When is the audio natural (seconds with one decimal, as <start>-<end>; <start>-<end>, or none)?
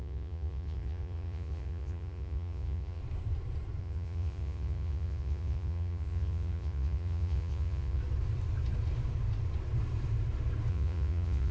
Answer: 3.0-3.8; 8.0-10.7